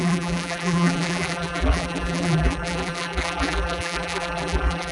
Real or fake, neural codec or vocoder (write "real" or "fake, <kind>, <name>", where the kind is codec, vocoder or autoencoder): fake, vocoder, BigVGAN v2